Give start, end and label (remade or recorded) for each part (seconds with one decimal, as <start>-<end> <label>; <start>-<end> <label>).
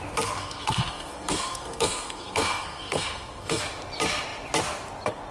0.0-0.4 recorded; 0.4-3.6 remade; 3.6-5.3 recorded